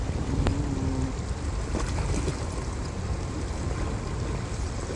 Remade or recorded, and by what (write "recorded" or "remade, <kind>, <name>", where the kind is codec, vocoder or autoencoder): recorded